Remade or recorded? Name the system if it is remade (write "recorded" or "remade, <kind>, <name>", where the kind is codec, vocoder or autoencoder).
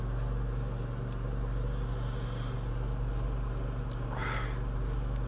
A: recorded